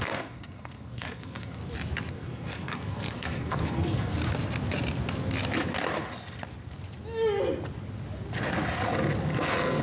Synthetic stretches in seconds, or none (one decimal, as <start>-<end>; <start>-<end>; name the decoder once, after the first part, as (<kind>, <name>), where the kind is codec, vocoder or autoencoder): 0.0-1.6 (codec, SNAC); 2.1-4.2; 9.3-9.8